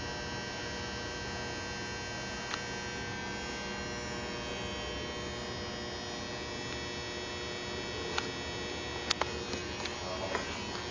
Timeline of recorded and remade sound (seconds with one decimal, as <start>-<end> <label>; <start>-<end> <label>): 0.0-10.9 recorded